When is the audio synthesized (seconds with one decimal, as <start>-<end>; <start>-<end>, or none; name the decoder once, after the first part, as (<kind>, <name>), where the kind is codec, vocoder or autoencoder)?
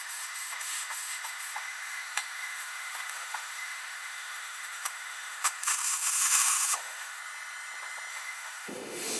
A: 0.0-7.2 (autoencoder, DAC-VAE); 8.1-9.2